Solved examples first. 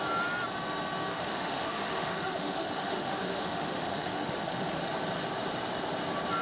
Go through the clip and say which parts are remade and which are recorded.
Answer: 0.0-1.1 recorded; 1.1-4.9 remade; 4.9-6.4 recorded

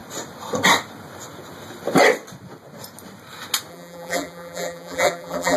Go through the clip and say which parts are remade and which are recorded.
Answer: 0.0-3.7 recorded; 3.7-5.6 remade

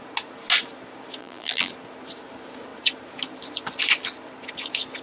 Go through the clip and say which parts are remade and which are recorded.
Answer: 0.0-1.2 recorded; 1.2-1.7 remade; 1.7-5.0 recorded

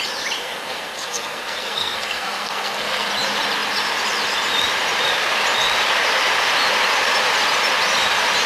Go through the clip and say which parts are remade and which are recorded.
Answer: 0.0-0.4 recorded; 0.4-3.1 remade; 3.1-8.5 recorded

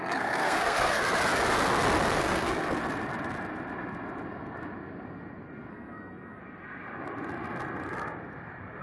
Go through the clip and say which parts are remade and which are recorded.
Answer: 0.0-1.0 remade; 1.0-2.2 recorded; 2.2-2.7 remade; 2.7-5.7 recorded; 5.7-6.4 remade; 6.4-8.8 recorded

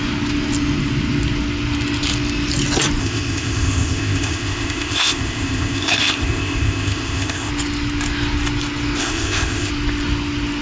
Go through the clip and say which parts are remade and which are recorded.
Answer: 0.0-3.0 recorded; 3.0-7.5 remade; 7.5-9.0 recorded; 9.0-9.7 remade; 9.7-10.6 recorded